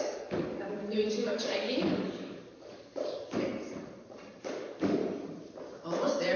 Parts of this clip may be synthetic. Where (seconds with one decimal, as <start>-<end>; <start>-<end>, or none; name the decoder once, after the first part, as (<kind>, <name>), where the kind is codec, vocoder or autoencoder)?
0.0-3.5 (codec, DAC); 4.4-5.0